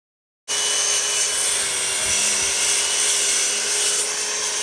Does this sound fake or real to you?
real